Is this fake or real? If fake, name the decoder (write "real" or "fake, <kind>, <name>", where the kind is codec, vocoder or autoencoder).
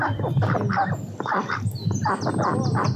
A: real